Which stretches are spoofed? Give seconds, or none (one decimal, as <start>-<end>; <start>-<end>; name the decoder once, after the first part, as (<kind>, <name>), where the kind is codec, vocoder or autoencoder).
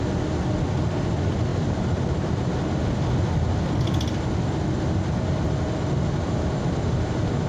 none